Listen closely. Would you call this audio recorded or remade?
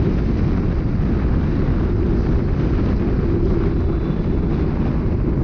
recorded